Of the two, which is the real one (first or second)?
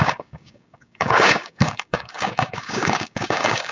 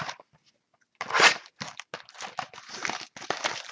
second